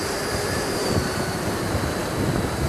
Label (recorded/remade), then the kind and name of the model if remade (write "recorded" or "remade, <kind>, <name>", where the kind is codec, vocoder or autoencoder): remade, vocoder, BigVGAN v2